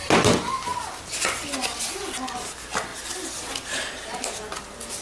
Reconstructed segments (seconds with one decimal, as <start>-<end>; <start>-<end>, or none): none